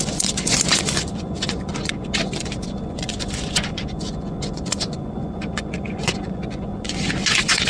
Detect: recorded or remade remade